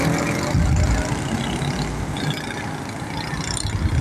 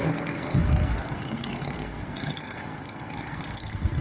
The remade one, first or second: second